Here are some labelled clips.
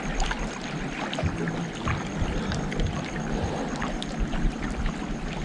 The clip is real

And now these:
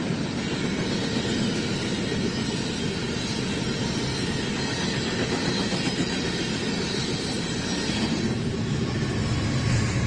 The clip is real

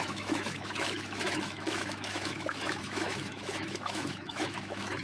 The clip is fake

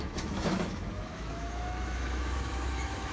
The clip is fake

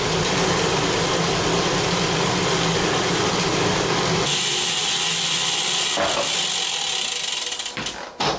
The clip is real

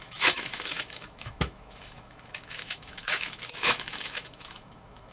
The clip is fake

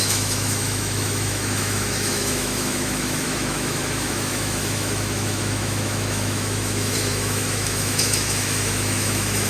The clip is fake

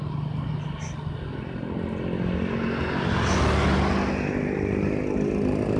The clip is real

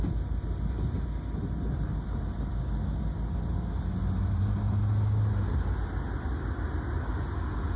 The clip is real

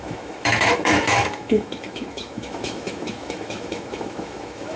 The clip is fake